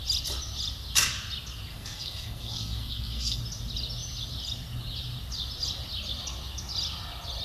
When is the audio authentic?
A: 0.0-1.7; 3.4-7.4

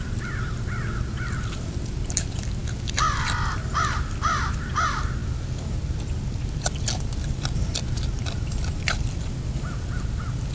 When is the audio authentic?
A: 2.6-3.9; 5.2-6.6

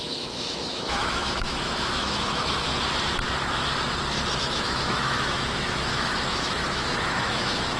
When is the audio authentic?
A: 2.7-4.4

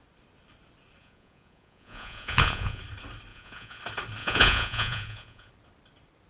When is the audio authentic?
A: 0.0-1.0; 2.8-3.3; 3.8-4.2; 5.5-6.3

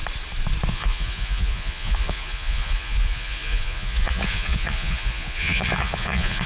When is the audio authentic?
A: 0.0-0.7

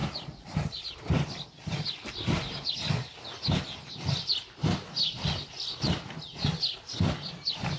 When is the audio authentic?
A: 0.8-7.8

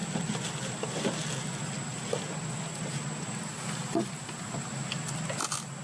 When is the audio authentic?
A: 0.0-5.8